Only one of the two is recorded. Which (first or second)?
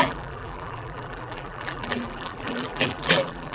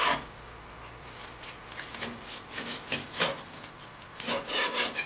second